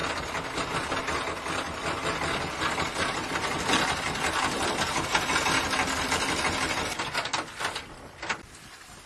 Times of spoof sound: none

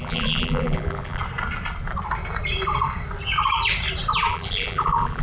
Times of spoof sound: 0.0-1.2; 4.3-5.2

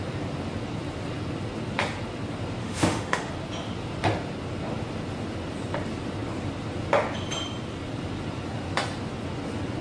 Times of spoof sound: 2.6-3.3

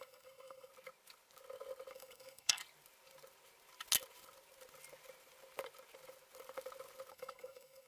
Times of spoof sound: 0.0-0.7; 1.9-2.6; 7.1-7.9

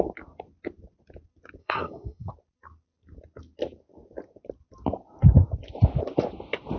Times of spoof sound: 1.6-2.3

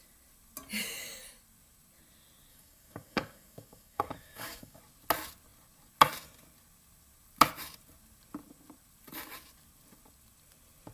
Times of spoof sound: 2.5-4.8

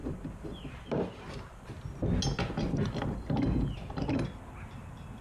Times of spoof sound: none